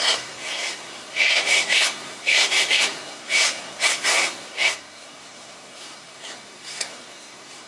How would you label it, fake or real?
fake